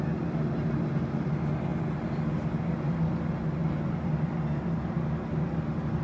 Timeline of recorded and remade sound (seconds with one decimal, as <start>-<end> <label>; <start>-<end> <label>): 0.0-6.0 recorded